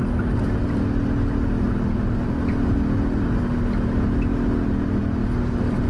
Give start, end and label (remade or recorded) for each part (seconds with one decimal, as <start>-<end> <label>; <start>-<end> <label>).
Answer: 0.0-5.9 recorded

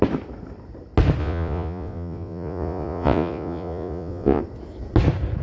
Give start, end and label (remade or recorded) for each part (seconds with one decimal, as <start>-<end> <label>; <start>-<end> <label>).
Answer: 0.0-1.2 recorded; 1.2-4.4 remade; 4.4-5.4 recorded

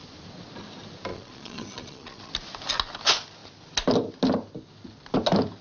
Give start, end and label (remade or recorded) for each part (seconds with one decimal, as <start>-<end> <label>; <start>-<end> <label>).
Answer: 0.0-1.1 recorded; 1.1-2.3 remade; 2.3-5.6 recorded

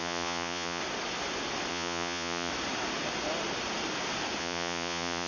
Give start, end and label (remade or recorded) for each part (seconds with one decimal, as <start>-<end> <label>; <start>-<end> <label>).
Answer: 0.0-0.8 remade; 0.8-1.7 recorded; 1.7-2.5 remade; 2.5-4.4 recorded; 4.4-5.3 remade

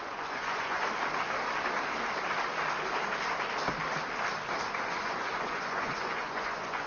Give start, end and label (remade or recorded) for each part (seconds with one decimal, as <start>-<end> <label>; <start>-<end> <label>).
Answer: 0.0-0.8 remade; 0.8-4.9 recorded; 4.9-6.9 remade